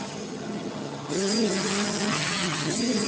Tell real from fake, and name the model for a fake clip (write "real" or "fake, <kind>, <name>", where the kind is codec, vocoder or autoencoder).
fake, vocoder, HiFi-GAN